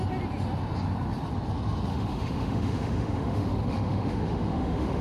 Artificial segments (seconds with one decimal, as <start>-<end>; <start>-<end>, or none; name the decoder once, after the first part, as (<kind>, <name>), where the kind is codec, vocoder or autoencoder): 1.9-5.0 (autoencoder, DAC-VAE)